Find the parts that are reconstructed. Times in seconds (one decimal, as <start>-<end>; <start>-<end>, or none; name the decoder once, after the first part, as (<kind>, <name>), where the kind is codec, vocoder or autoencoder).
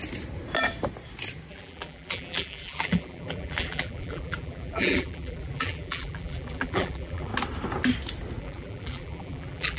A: 1.5-7.3 (vocoder, BigVGAN v2); 8.4-9.8